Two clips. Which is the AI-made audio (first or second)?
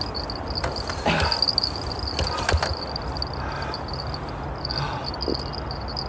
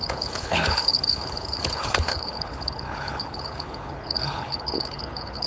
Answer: second